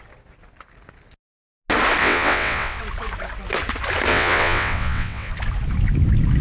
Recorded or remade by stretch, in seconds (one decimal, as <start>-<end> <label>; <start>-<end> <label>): 0.0-2.0 recorded; 2.0-2.8 remade; 2.8-4.1 recorded; 4.1-5.3 remade; 5.3-6.4 recorded